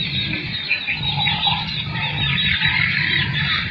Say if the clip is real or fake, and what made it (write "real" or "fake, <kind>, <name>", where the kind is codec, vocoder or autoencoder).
real